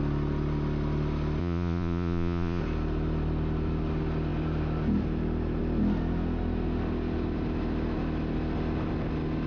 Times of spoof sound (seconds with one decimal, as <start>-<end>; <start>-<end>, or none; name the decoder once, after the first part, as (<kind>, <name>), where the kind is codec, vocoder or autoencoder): 1.4-2.6 (vocoder, Vocos)